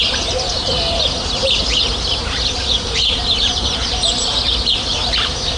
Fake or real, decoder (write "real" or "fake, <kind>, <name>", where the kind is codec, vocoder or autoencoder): fake, vocoder, BigVGAN v2